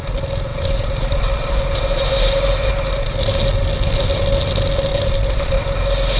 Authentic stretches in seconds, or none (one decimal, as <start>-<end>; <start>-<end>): 0.0-0.5; 2.7-4.9; 5.6-6.2